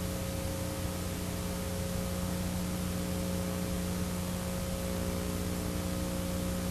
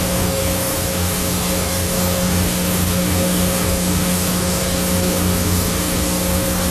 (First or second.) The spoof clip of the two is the second